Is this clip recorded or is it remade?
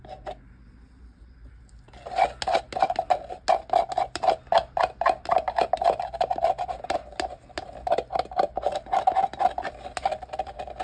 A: recorded